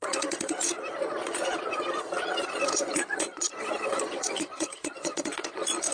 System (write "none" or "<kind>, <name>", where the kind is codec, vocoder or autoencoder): vocoder, Vocos